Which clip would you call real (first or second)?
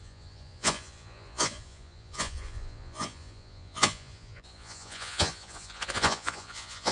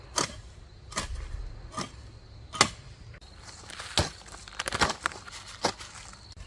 second